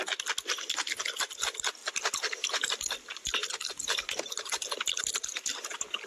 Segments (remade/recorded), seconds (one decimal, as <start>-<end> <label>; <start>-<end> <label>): 0.0-1.8 recorded; 1.8-3.9 remade; 3.9-6.1 recorded